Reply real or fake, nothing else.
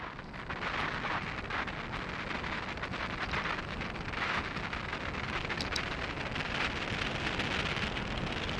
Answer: real